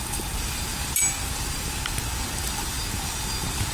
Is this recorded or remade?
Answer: recorded